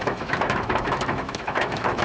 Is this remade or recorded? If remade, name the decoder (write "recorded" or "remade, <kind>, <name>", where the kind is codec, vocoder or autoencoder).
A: remade, autoencoder, DAC-VAE